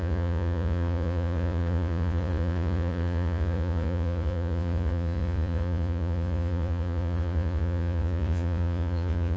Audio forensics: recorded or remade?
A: remade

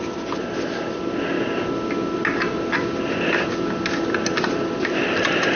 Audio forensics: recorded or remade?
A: recorded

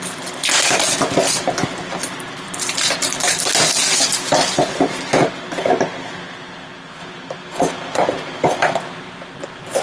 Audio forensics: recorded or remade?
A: recorded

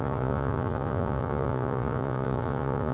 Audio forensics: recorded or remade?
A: remade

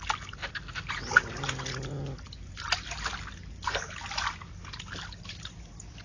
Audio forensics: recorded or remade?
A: recorded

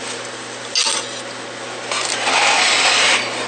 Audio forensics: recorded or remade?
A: recorded